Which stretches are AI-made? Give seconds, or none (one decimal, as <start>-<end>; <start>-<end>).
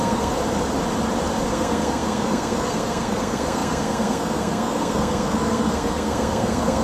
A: 0.0-0.4; 1.5-6.8